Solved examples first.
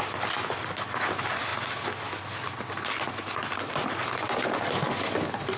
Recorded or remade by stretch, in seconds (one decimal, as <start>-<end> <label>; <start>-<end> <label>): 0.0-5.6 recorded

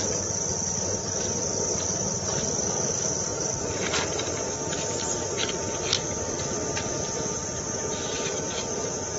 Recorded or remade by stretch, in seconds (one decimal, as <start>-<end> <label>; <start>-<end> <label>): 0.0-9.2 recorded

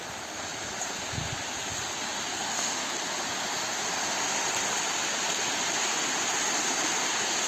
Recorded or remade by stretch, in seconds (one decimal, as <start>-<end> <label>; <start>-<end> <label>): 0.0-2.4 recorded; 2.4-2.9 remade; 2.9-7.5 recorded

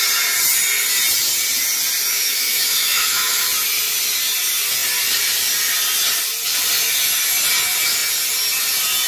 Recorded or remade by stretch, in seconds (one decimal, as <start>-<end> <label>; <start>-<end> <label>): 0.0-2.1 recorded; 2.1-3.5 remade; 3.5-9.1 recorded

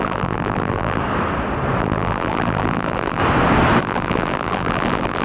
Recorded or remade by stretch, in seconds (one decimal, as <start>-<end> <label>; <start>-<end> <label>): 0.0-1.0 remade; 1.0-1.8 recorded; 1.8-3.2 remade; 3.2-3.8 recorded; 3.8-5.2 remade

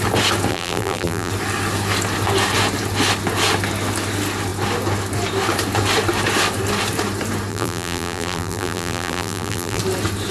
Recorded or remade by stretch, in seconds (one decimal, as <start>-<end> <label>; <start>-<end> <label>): 0.0-0.5 recorded; 0.5-1.3 remade; 1.3-7.5 recorded; 7.5-9.8 remade; 9.8-10.3 recorded